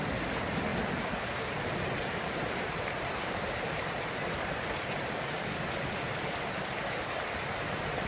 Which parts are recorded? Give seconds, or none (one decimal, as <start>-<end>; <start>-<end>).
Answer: 0.0-0.7; 5.5-8.1